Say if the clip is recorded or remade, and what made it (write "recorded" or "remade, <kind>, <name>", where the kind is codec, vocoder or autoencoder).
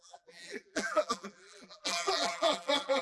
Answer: remade, vocoder, BigVGAN v2